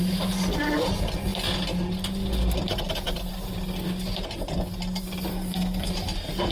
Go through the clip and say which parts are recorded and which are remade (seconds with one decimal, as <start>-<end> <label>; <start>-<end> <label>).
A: 0.0-5.3 recorded; 5.3-5.9 remade; 5.9-6.5 recorded